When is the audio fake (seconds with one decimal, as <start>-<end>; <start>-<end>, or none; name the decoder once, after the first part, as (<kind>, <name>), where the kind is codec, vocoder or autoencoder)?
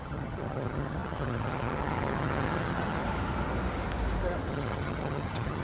0.0-3.0 (vocoder, HiFi-GAN); 4.5-5.6